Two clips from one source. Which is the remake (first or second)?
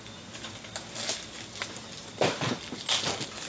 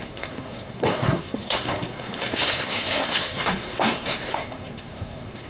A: second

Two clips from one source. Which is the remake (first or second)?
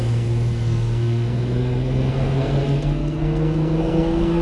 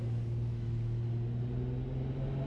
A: first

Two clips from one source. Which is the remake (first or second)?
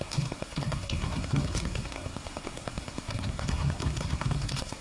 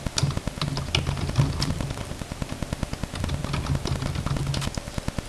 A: first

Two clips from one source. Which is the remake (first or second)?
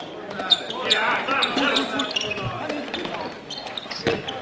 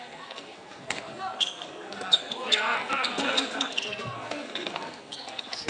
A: second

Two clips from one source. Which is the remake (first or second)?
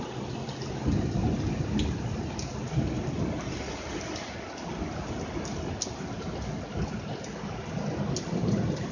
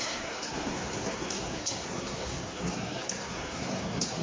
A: second